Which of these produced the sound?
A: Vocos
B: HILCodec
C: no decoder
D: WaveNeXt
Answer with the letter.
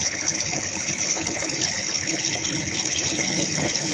B